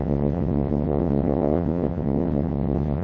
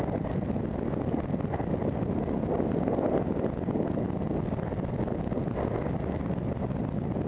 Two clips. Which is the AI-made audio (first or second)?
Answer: first